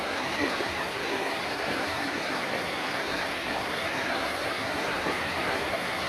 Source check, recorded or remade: remade